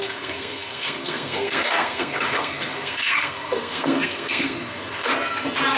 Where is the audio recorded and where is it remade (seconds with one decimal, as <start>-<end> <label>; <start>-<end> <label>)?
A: 0.0-5.1 remade; 5.1-5.8 recorded